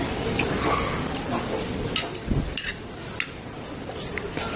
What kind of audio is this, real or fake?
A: real